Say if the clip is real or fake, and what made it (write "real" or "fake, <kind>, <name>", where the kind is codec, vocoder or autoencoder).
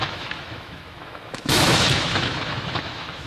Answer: fake, autoencoder, DAC-VAE